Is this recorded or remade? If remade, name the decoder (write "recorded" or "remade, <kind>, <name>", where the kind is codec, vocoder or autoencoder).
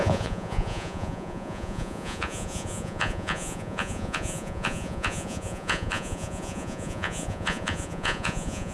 remade, vocoder, Vocos